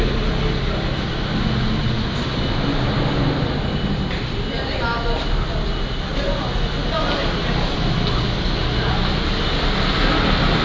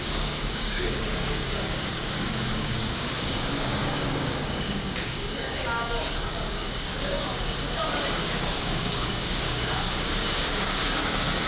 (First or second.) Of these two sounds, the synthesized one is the second